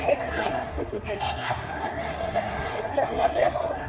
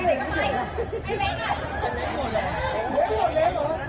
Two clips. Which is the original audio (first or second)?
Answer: second